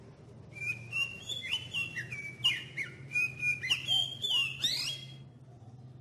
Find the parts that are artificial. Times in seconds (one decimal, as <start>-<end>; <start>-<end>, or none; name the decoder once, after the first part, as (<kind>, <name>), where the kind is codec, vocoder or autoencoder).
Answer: none